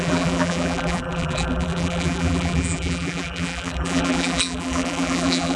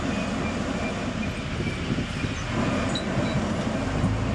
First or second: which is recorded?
second